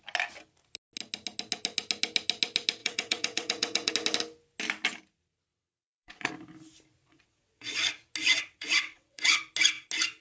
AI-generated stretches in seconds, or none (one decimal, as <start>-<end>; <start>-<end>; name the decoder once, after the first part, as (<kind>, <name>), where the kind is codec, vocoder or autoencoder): 2.8-3.9 (vocoder, WaveNeXt); 5.5-6.3; 7.0-7.7; 8.3-9.4